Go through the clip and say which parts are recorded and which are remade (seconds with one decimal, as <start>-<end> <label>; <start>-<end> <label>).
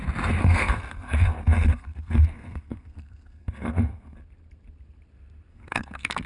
0.0-0.4 recorded; 0.4-4.2 remade; 4.2-5.5 recorded; 5.5-6.3 remade